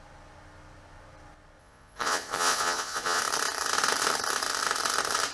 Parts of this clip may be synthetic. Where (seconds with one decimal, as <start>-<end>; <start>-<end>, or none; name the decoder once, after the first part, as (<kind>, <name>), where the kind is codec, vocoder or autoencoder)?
1.6-3.2 (vocoder, Vocos)